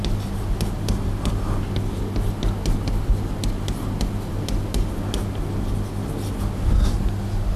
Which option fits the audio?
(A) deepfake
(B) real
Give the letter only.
B